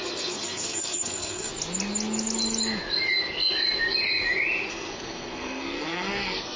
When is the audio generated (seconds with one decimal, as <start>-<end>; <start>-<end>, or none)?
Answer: 0.0-1.5; 4.7-6.6